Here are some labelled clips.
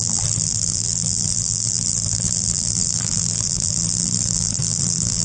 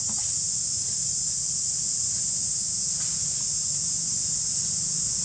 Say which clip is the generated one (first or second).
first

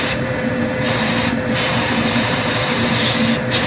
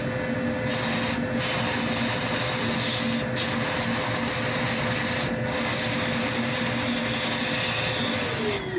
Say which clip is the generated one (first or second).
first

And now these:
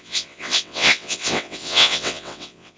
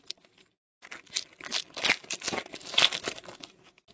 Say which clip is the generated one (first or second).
first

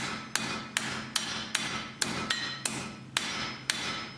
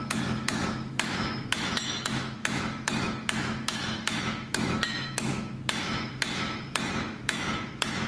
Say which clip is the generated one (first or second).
second